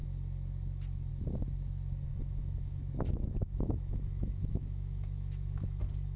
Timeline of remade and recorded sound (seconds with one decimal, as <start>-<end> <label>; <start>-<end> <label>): 0.0-2.1 recorded; 2.1-5.8 remade; 5.8-6.2 recorded